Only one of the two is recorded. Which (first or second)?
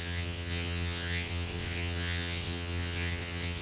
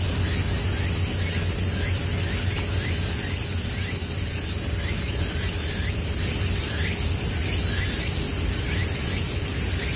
second